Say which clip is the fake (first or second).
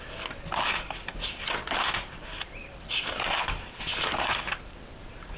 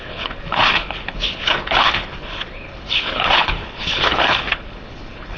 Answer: second